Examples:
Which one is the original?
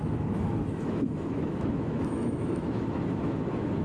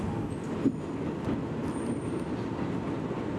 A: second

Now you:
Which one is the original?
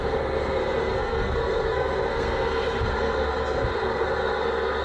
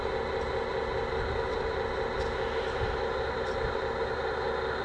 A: second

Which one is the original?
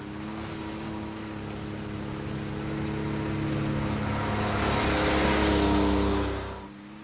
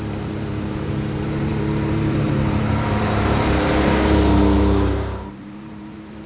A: first